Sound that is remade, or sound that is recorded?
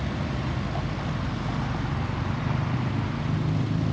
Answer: recorded